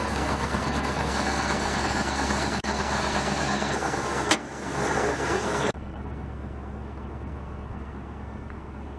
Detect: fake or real fake